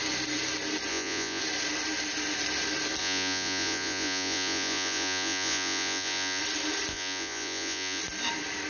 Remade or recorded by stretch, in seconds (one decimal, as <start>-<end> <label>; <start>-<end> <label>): 0.0-0.9 recorded; 0.9-1.4 remade; 1.4-3.0 recorded; 3.0-6.4 remade; 6.4-6.9 recorded; 6.9-8.0 remade; 8.0-8.7 recorded